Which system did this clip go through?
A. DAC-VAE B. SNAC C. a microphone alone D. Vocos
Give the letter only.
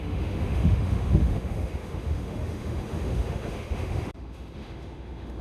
A